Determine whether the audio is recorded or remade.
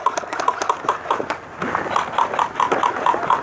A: recorded